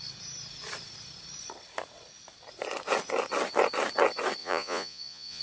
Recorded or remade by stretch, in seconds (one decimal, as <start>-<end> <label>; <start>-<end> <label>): 0.0-4.4 recorded; 4.4-5.4 remade